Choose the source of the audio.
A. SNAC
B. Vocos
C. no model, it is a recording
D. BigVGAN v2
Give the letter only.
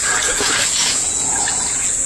B